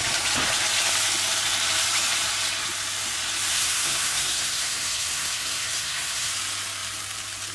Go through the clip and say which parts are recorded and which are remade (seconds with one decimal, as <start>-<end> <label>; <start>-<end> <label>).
0.0-3.5 recorded; 3.5-6.3 remade; 6.3-7.5 recorded